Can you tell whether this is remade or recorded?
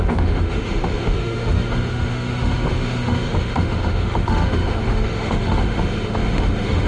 remade